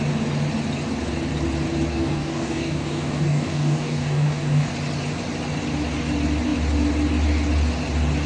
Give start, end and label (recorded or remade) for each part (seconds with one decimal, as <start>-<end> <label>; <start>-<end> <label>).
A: 0.0-1.9 recorded; 1.9-4.7 remade; 4.7-8.3 recorded